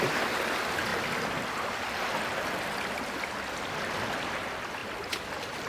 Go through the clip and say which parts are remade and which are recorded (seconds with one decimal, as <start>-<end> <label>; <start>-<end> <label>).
0.0-4.8 recorded; 4.8-5.3 remade; 5.3-5.7 recorded